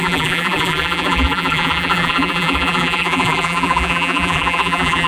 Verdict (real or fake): fake